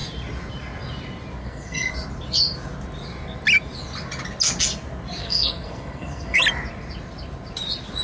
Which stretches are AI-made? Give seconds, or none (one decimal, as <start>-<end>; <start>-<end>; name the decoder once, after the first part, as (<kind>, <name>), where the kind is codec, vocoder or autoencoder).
1.4-1.9 (codec, SNAC); 5.2-6.4